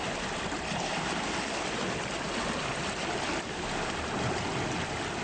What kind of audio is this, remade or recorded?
recorded